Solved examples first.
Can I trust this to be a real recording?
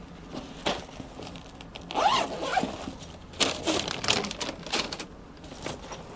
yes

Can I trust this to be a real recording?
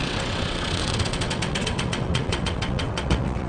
no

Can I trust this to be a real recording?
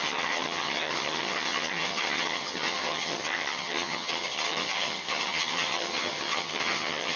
no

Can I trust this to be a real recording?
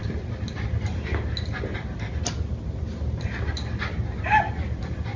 yes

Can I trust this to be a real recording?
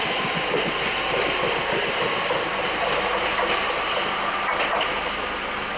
yes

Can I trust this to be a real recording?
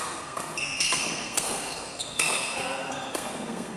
no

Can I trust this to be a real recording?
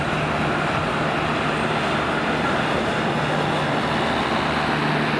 yes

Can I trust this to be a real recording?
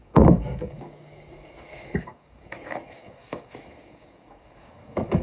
no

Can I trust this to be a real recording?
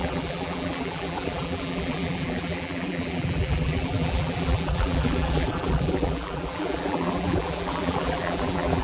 no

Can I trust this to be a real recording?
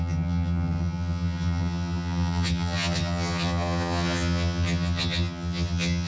no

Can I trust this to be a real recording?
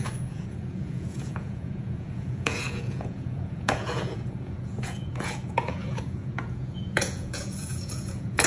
no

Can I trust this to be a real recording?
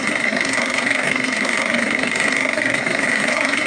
no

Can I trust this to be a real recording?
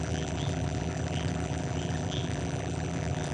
no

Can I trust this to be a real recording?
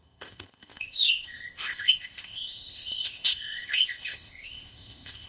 no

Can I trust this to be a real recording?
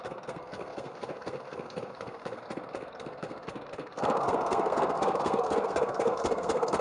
no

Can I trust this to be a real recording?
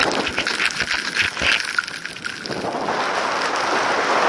yes